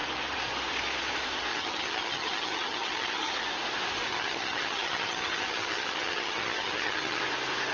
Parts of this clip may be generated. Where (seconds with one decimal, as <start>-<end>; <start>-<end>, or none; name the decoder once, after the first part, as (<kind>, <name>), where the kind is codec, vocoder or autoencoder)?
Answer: 1.5-3.3 (vocoder, HiFi-GAN); 4.1-7.2